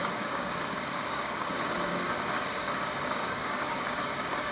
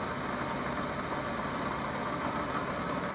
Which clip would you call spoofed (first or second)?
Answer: first